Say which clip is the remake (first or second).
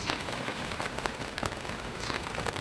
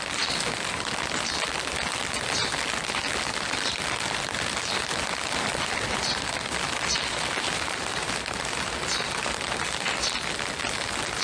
first